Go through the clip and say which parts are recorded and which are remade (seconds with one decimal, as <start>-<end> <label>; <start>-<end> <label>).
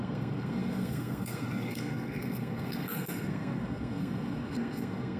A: 0.0-5.2 remade